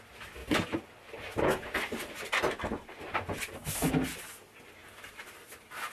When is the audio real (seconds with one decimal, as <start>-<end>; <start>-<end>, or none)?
0.0-0.4; 3.9-4.8